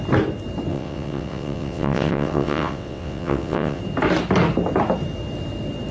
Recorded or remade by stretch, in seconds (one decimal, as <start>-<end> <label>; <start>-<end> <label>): 0.0-0.7 recorded; 0.7-3.8 remade; 3.8-5.9 recorded